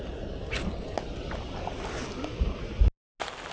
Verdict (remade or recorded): recorded